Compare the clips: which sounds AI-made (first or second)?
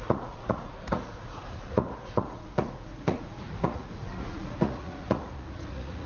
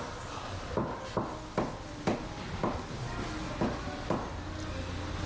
first